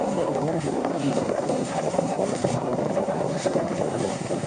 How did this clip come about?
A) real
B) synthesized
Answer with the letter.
B